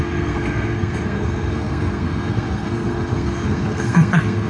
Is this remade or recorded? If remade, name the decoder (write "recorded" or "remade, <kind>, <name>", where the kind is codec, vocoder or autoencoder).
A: remade, codec, SNAC